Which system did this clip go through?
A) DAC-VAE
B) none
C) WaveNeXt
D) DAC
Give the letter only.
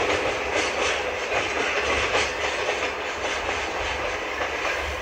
B